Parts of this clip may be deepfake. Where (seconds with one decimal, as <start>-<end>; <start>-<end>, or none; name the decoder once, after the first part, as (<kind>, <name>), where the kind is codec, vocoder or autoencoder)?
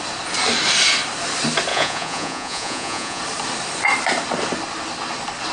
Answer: 1.7-3.2 (vocoder, Vocos)